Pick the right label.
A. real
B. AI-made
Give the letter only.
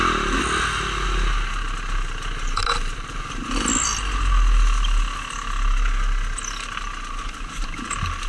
A